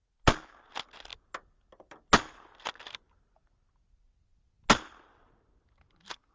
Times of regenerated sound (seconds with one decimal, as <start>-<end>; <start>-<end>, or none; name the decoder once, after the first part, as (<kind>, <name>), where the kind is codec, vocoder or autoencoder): none